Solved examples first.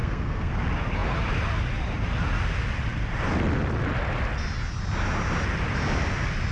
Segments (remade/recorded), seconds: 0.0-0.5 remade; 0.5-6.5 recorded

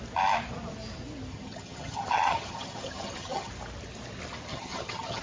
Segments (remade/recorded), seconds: 0.0-1.3 recorded; 1.3-3.5 remade; 3.5-4.5 recorded; 4.5-5.2 remade

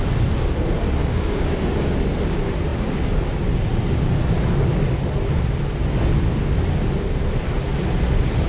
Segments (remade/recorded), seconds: 0.0-1.0 recorded; 1.0-1.9 remade; 1.9-8.5 recorded

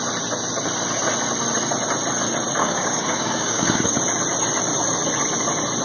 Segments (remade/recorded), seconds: 0.0-2.6 recorded; 2.6-3.9 remade; 3.9-5.8 recorded

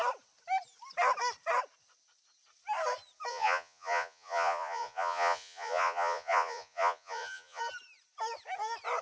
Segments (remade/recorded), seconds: 0.0-3.3 recorded; 3.3-7.6 remade; 7.6-9.0 recorded

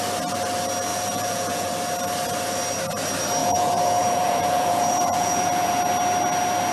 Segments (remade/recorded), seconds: 0.0-0.9 recorded; 0.9-1.7 remade; 1.7-3.4 recorded; 3.4-5.8 remade; 5.8-6.7 recorded